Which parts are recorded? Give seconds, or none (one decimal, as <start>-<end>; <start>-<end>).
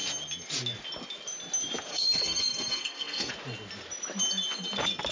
0.0-1.9; 3.3-5.1